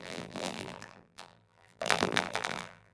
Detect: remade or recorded remade